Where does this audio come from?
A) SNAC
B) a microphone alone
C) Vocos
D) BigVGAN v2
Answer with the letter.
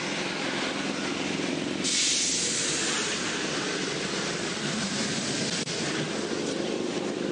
D